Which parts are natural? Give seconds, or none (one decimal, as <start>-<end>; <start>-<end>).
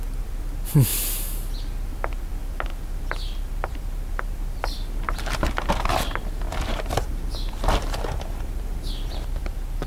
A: 0.9-1.9